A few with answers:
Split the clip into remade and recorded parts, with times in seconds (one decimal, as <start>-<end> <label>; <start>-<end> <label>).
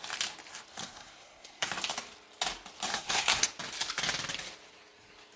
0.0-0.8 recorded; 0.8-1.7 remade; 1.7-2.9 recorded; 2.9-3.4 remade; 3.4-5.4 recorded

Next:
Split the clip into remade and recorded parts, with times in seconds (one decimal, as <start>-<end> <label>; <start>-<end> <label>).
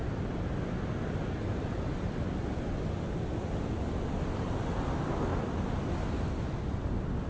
0.0-7.3 recorded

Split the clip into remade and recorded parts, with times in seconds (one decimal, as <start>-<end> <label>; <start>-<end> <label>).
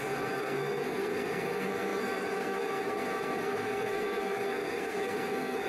0.0-5.7 remade